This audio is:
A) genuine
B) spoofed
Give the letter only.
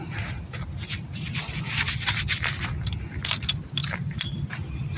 A